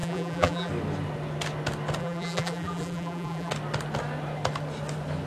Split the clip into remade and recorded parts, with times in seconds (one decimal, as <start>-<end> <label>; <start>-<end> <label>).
0.0-0.7 remade; 0.7-2.0 recorded; 2.0-3.5 remade; 3.5-5.3 recorded

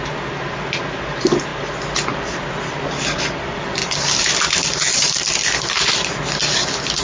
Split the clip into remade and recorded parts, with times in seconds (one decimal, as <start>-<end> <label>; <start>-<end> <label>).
0.0-5.4 recorded; 5.4-6.4 remade; 6.4-7.0 recorded

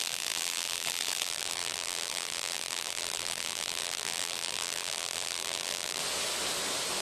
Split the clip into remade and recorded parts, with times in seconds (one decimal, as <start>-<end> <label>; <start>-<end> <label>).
0.0-6.0 remade; 6.0-7.0 recorded

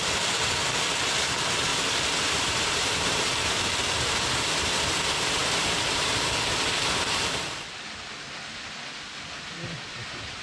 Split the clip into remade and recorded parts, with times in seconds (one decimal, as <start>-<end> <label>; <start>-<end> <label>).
0.0-1.7 recorded; 1.7-3.6 remade; 3.6-10.4 recorded

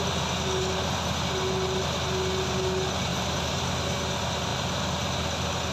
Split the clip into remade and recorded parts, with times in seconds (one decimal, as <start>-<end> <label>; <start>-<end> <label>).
0.0-3.1 recorded; 3.1-3.6 remade; 3.6-5.7 recorded

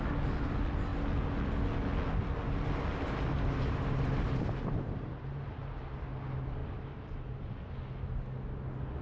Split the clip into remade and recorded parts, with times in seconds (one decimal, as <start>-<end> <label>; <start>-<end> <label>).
0.0-2.9 recorded; 2.9-5.6 remade; 5.6-6.6 recorded; 6.6-7.7 remade; 7.7-9.0 recorded